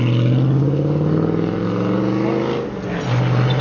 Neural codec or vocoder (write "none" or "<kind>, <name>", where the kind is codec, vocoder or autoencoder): none